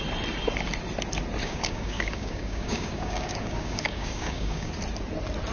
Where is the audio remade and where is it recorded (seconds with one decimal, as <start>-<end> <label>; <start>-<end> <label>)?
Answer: 0.0-1.4 recorded; 1.4-4.7 remade; 4.7-5.5 recorded